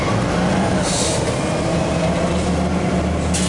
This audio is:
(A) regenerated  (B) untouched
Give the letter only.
B